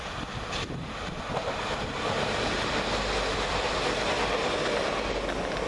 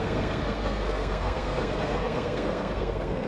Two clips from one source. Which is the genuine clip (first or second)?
first